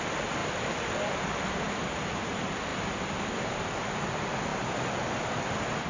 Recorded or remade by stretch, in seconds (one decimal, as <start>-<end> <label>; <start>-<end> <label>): 0.0-0.4 recorded; 0.4-0.9 remade; 0.9-2.7 recorded; 2.7-3.6 remade; 3.6-4.5 recorded; 4.5-5.5 remade; 5.5-5.9 recorded